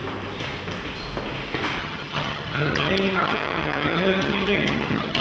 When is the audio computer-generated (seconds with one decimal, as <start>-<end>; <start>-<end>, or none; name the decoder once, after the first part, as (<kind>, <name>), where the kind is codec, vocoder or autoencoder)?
1.8-5.2 (vocoder, HiFi-GAN)